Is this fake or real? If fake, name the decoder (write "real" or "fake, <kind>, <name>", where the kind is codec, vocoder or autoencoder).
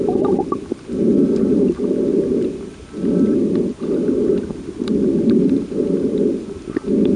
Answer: real